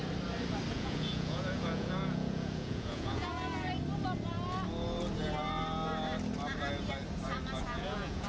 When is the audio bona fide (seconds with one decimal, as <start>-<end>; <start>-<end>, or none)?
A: 0.0-0.7; 3.3-7.6